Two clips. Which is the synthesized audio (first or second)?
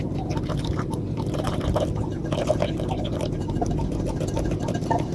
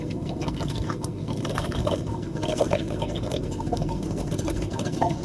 second